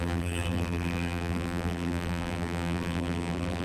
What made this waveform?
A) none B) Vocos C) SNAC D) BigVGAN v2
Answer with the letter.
D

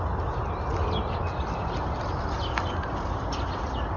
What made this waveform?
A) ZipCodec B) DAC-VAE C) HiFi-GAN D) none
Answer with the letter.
D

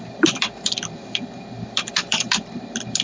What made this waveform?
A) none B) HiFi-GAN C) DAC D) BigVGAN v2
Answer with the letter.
D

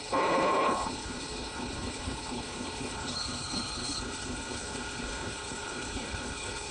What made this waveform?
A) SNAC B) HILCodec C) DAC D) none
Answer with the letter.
B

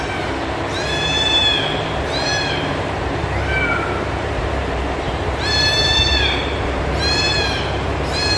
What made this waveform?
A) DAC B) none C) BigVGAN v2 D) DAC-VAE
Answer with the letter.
C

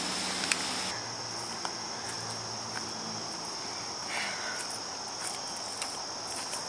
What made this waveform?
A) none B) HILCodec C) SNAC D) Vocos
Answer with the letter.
A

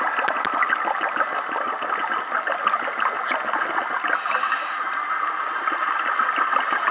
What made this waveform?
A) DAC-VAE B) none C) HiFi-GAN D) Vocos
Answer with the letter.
B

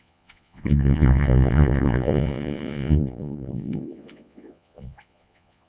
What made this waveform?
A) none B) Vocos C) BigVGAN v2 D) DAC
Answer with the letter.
B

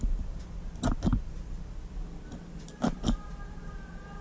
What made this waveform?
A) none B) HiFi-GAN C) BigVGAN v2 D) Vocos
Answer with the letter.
A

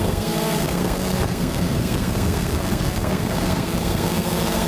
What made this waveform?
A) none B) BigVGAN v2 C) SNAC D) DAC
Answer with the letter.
C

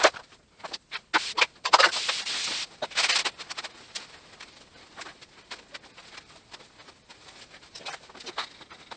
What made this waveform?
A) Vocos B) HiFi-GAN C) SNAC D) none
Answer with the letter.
D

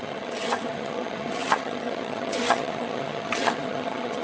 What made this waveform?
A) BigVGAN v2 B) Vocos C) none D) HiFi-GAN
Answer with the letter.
D